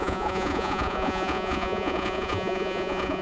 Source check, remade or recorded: remade